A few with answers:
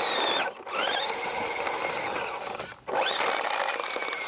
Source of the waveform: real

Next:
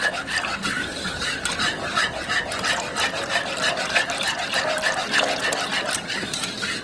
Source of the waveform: fake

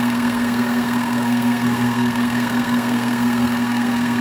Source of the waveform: fake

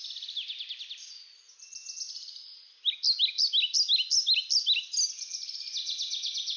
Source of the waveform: real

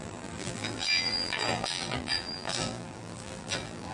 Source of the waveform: fake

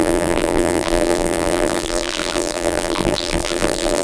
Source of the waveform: fake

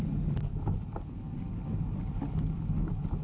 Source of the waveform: real